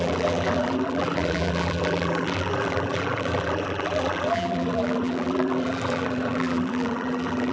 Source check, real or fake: fake